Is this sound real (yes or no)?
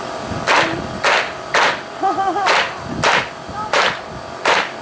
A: yes